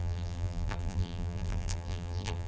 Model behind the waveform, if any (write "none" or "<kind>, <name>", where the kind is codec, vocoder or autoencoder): vocoder, BigVGAN v2